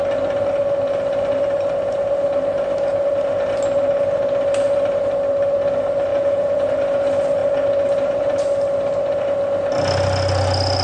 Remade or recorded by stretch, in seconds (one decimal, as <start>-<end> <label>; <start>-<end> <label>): 0.0-6.1 recorded; 6.1-6.7 remade; 6.7-10.8 recorded